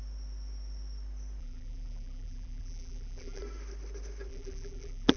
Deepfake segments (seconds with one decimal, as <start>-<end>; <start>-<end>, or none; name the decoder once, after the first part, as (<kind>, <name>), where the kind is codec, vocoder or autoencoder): 1.4-3.4 (vocoder, BigVGAN v2); 4.3-5.2